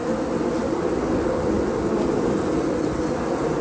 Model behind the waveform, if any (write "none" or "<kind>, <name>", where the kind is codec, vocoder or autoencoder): none